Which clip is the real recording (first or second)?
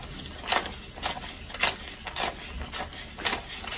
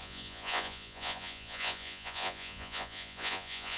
first